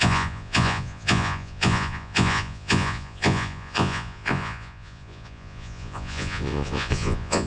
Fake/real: fake